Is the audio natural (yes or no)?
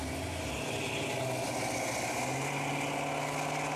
yes